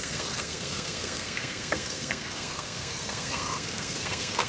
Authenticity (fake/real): fake